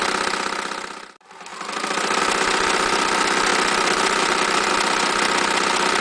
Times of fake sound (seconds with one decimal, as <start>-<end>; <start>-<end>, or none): 1.5-2.2; 3.5-4.7